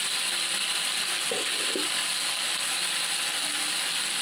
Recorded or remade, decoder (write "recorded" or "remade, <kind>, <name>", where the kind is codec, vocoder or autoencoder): recorded